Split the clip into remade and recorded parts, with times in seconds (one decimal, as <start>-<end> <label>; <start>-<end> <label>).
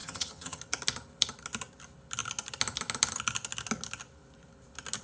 0.0-0.6 remade; 0.6-5.0 recorded